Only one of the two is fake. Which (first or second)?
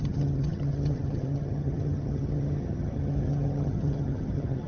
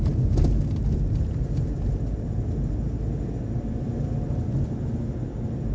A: first